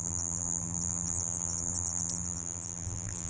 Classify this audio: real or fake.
fake